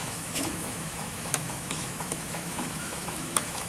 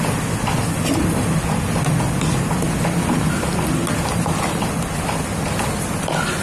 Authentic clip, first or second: second